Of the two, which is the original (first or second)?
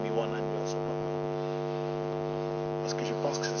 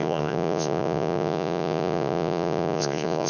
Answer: first